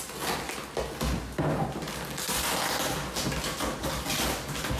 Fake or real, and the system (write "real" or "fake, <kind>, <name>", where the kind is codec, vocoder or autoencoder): real